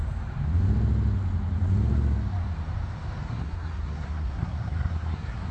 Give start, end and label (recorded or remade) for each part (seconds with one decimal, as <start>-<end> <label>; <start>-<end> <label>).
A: 0.0-3.2 recorded; 3.2-5.5 remade